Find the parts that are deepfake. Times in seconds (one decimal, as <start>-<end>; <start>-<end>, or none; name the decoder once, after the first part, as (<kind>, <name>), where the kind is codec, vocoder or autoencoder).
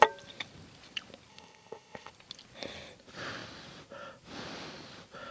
1.3-2.1 (codec, ZipCodec)